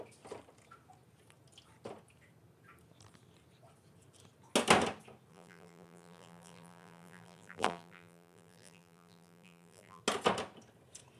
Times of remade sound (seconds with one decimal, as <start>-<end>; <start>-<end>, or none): 5.3-10.0